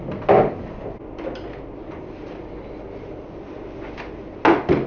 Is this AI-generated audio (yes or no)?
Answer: no